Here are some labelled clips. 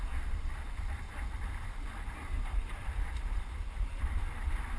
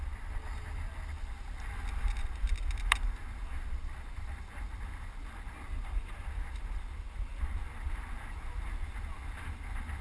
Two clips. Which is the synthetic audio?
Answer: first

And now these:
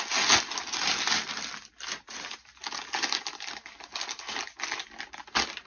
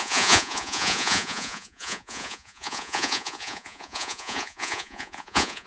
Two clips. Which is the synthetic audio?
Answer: second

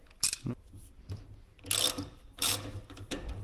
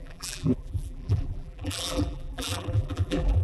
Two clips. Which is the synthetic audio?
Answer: second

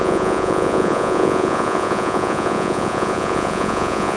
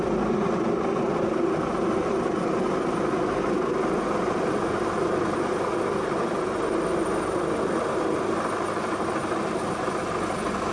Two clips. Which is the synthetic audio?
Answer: first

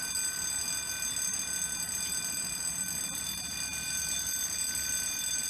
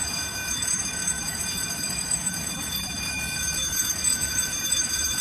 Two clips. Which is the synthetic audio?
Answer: second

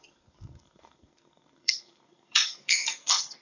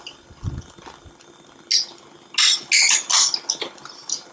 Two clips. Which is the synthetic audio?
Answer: first